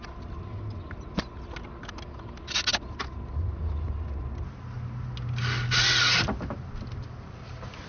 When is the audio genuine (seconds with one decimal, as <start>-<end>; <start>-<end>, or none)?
0.0-7.9